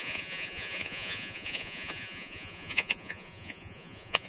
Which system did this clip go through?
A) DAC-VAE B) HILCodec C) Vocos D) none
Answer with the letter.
C